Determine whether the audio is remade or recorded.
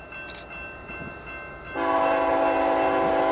recorded